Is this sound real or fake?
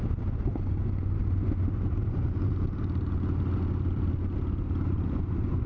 real